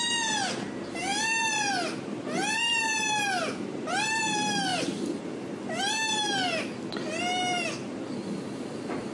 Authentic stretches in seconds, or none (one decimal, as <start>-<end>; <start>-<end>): 0.0-1.1; 4.2-9.1